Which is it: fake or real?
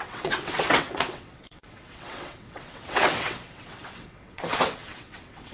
fake